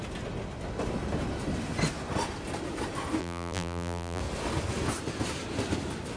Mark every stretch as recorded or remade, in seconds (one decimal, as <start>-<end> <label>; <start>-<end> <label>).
0.0-3.2 recorded; 3.2-4.2 remade; 4.2-6.2 recorded